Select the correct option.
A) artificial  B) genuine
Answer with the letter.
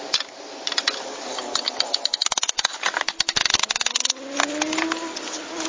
B